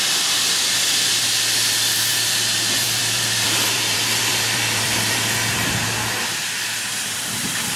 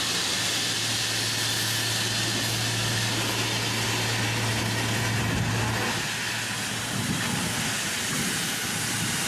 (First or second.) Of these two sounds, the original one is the second